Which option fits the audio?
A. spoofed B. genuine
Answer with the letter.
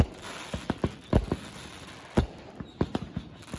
B